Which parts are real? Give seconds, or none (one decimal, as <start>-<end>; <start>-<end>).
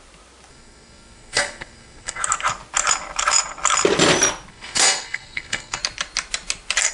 0.0-0.5; 2.2-4.5; 5.8-6.9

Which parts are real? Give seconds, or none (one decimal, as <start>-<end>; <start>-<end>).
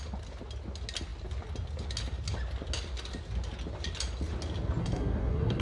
0.0-4.8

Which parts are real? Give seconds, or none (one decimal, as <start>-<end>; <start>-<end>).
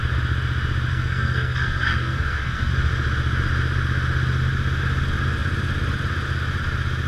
0.0-0.9; 2.7-7.1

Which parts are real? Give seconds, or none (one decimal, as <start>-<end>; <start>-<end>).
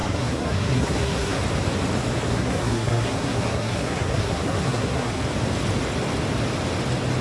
1.4-2.3; 5.2-7.2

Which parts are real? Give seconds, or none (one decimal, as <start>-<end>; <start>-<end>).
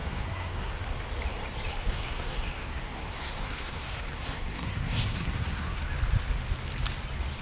0.8-1.7; 5.8-7.4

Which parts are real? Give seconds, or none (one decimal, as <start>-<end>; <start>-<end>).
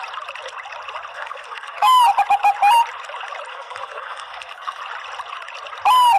0.0-1.1; 2.0-3.5; 4.8-6.2